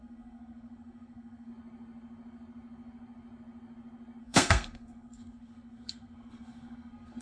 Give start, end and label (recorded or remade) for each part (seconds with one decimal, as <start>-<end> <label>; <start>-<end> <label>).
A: 0.0-1.5 remade; 1.5-4.2 recorded; 4.2-7.2 remade